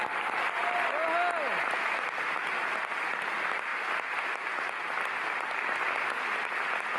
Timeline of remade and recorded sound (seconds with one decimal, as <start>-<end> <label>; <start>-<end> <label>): 0.0-7.0 recorded

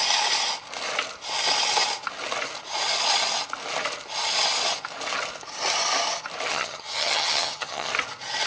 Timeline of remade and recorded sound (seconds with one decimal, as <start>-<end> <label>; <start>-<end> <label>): 0.0-6.5 recorded; 6.5-7.9 remade; 7.9-8.5 recorded